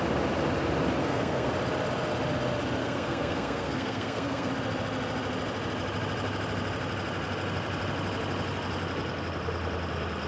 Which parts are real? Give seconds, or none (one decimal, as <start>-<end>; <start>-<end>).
0.0-1.0; 1.5-2.8; 4.5-10.3